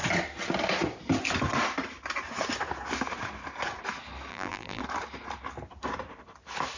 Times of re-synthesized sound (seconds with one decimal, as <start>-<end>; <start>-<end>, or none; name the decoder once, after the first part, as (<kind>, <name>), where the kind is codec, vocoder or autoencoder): 4.3-4.8 (vocoder, BigVGAN v2)